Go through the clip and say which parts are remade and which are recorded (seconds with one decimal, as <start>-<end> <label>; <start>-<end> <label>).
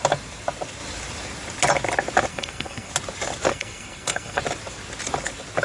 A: 0.0-2.3 recorded; 2.3-2.9 remade; 2.9-3.5 recorded; 3.5-4.4 remade; 4.4-5.6 recorded